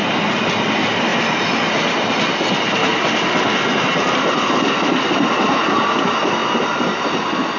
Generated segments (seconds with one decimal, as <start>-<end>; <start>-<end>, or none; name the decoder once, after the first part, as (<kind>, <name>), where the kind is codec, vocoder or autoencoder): none